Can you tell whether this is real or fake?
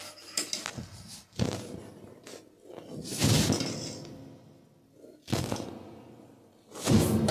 real